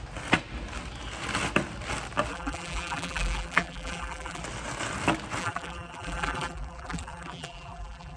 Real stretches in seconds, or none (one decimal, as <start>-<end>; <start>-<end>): 0.0-2.3; 4.4-5.4